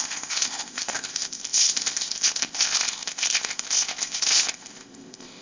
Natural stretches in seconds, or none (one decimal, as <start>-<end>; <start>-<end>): none